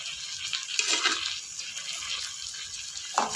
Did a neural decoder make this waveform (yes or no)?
no